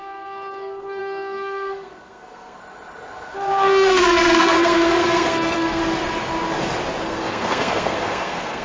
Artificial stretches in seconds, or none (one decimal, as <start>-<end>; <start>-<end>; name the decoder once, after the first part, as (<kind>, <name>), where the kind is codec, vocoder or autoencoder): 0.0-2.6 (codec, SNAC); 3.3-5.8; 7.0-8.6

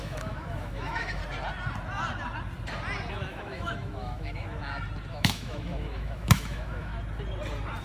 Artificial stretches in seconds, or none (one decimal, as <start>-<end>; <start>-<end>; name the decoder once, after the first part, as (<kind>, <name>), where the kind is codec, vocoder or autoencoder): 0.0-1.2 (autoencoder, DAC-VAE); 3.1-4.6; 5.1-6.9

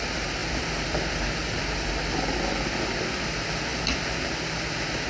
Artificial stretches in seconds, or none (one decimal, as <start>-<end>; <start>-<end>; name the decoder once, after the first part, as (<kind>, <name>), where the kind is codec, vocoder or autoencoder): none